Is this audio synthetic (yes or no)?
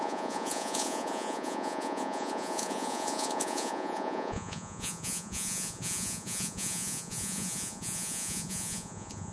yes